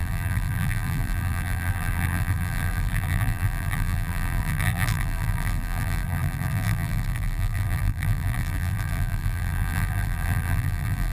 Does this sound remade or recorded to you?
remade